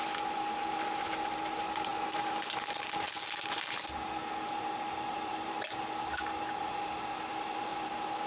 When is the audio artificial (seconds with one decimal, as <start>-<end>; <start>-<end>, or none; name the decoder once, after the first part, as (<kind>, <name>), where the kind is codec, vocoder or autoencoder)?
0.0-1.9 (vocoder, BigVGAN v2); 5.3-8.3